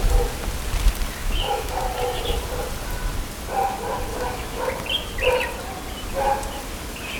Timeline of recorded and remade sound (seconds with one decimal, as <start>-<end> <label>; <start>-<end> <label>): 0.0-1.2 recorded; 1.2-1.8 remade; 1.8-4.1 recorded; 4.1-4.7 remade; 4.7-7.2 recorded